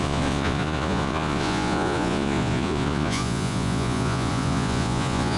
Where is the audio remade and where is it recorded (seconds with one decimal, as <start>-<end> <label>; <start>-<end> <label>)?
0.0-5.4 remade